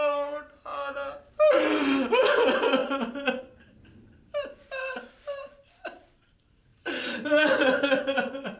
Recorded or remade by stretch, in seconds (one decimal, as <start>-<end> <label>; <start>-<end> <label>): 0.0-0.7 remade; 0.7-2.2 recorded; 2.2-2.8 remade; 2.8-3.4 recorded; 3.4-8.6 remade